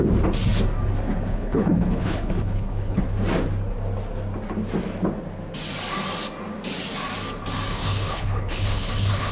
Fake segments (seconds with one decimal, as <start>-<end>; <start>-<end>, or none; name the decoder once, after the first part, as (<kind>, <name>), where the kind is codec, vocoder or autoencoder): 1.3-3.0 (codec, HILCodec); 7.7-9.3